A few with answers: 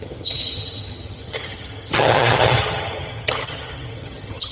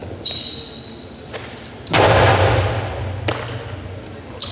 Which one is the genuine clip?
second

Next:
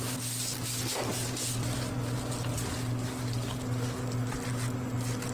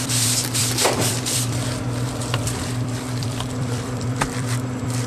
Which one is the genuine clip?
first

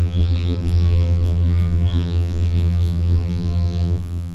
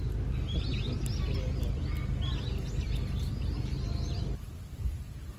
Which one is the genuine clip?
second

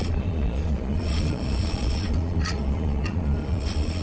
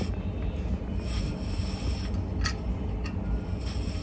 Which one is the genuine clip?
second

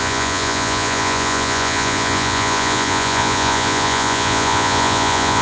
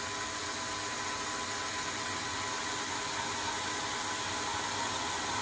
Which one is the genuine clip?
second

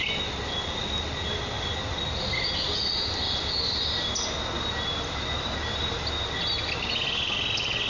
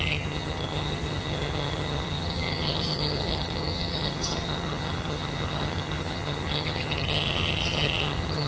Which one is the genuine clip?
first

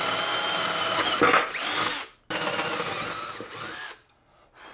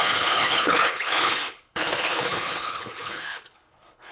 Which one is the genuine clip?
first